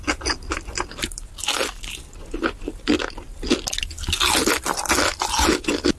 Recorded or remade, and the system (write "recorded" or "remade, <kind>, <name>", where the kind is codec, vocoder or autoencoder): recorded